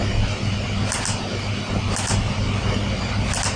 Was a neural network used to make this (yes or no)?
no